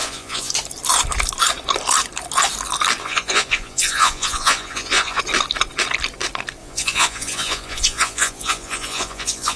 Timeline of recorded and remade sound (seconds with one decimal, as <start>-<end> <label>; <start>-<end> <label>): 0.0-0.5 remade; 0.5-3.0 recorded; 3.0-5.2 remade; 5.2-6.6 recorded; 6.6-9.6 remade